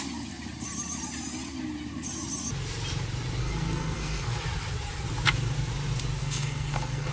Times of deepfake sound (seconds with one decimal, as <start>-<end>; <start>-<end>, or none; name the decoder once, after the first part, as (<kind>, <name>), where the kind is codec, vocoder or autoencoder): 3.4-4.4 (codec, SNAC); 6.2-7.1